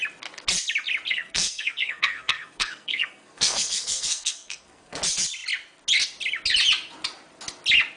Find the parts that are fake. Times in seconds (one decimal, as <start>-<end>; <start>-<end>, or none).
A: 1.1-5.0